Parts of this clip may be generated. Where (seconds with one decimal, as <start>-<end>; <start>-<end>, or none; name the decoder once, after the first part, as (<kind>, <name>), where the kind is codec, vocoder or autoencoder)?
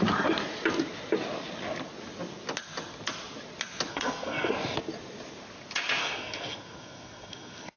3.9-4.5 (codec, SNAC); 6.0-7.8